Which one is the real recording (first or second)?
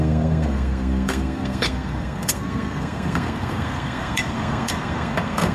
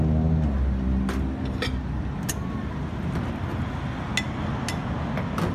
second